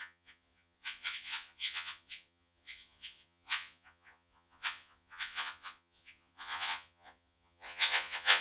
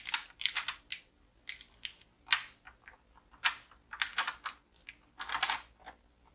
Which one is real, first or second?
second